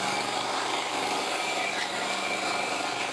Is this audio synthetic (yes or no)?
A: yes